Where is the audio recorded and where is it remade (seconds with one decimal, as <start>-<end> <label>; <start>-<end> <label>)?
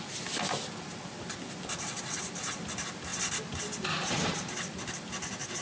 0.0-5.6 recorded